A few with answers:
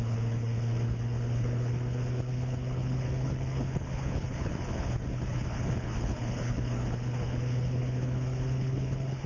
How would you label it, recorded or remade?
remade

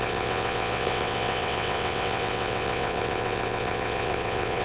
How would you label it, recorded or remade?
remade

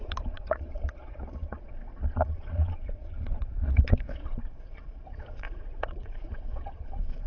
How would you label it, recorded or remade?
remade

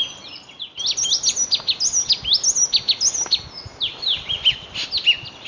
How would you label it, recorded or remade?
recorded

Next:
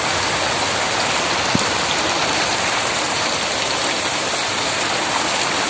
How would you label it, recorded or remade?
recorded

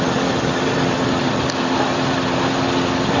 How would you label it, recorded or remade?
recorded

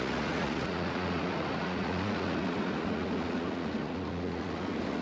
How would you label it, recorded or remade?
remade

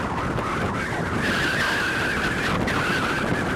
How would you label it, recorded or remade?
recorded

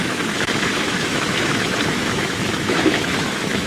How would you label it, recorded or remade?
remade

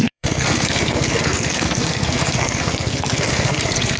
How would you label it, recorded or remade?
remade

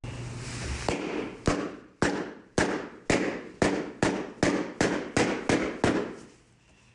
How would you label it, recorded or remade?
recorded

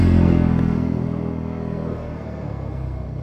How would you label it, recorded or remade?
remade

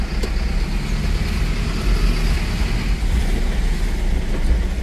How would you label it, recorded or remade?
recorded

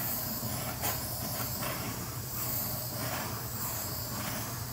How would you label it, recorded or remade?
remade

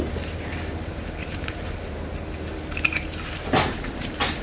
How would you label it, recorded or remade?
remade